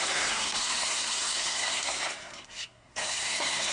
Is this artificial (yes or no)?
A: yes